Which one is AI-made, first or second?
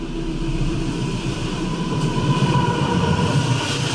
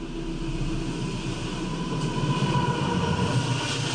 first